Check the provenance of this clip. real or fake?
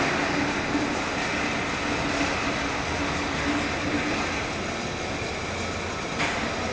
real